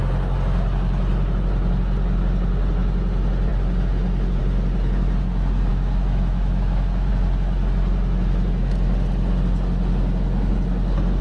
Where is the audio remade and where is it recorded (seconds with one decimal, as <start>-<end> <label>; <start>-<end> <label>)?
0.0-5.7 recorded; 5.7-7.1 remade; 7.1-11.2 recorded